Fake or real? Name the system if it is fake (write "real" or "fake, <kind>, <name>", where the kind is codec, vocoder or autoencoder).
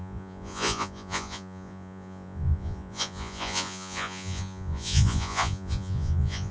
fake, vocoder, Vocos